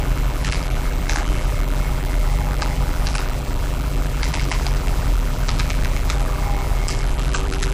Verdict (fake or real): fake